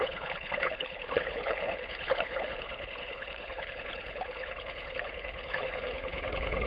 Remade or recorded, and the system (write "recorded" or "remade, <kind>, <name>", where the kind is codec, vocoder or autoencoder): remade, codec, HILCodec